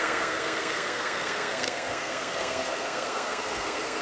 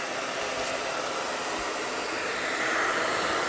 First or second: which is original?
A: second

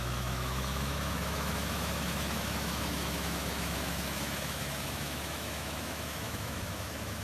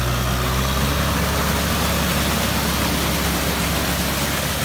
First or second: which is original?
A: second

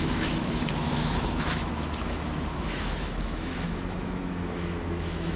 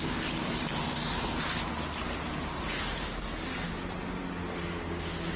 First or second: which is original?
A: second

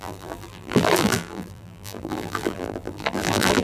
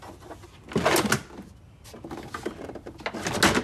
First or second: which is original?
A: second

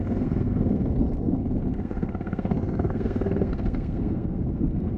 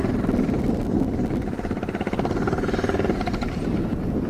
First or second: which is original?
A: second